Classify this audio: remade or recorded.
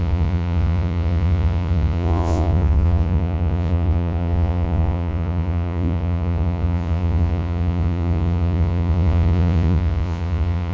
remade